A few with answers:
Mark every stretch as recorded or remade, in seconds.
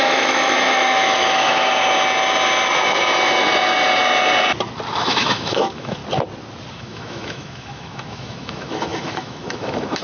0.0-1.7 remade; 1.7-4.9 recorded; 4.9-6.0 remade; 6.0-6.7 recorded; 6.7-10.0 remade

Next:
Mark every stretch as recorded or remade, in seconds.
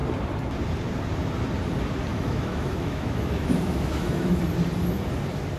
0.0-2.1 recorded; 2.1-4.4 remade; 4.4-5.6 recorded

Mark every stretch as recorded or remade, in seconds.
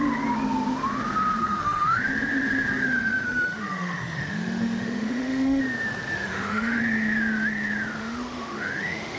0.0-1.4 recorded; 1.4-2.0 remade; 2.0-2.8 recorded; 2.8-5.6 remade; 5.6-6.1 recorded; 6.1-6.8 remade; 6.8-8.0 recorded; 8.0-9.2 remade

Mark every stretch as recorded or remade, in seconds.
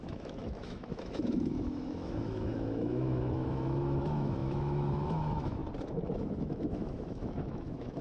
0.0-5.6 remade; 5.6-6.2 recorded; 6.2-8.0 remade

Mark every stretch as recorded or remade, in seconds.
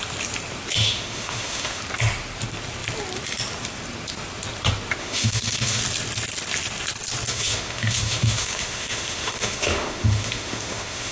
0.0-0.7 recorded; 0.7-1.8 remade; 1.8-5.0 recorded; 5.0-5.8 remade; 5.8-7.3 recorded; 7.3-11.1 remade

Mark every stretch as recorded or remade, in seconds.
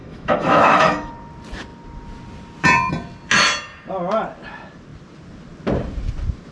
0.0-1.1 remade; 1.1-6.5 recorded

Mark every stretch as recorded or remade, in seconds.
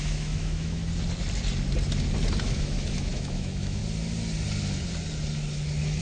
0.0-0.8 remade; 0.8-2.4 recorded; 2.4-3.8 remade; 3.8-6.0 recorded